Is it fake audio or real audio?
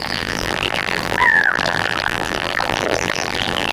fake